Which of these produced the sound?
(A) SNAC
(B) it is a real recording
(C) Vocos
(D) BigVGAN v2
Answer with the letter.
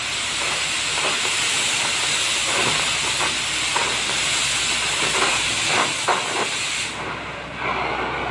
B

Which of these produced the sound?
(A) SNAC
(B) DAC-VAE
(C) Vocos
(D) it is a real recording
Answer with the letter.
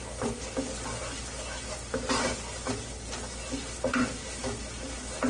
D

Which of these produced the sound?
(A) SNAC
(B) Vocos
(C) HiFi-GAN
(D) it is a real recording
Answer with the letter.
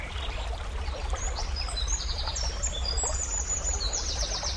D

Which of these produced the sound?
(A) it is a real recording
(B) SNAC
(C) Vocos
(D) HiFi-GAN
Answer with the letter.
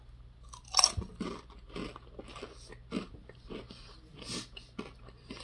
A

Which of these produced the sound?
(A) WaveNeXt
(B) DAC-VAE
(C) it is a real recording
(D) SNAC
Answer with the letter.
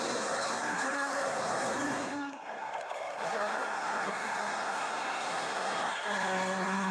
D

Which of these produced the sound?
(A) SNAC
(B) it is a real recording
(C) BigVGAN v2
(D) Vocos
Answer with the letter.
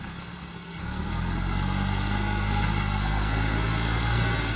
A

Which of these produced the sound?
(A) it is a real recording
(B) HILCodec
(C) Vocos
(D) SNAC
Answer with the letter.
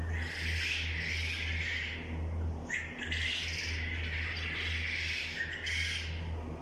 A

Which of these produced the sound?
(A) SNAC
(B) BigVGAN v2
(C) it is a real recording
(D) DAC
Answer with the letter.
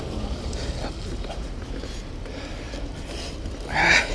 C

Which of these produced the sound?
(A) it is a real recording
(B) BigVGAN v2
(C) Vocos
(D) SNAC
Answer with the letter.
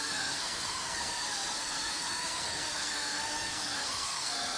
D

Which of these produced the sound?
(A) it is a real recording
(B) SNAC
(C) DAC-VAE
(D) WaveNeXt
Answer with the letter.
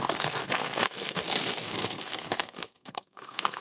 B